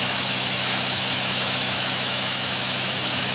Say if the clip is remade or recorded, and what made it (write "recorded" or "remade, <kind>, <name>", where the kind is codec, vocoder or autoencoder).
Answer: remade, autoencoder, DAC-VAE